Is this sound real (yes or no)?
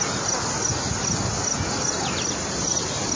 yes